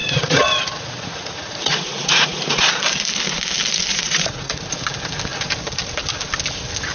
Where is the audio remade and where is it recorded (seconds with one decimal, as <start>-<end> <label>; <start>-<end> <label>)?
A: 0.0-2.5 remade; 2.5-3.9 recorded; 3.9-4.6 remade; 4.6-6.9 recorded